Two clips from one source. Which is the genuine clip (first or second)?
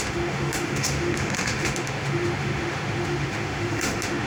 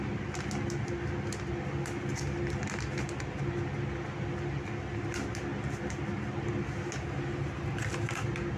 second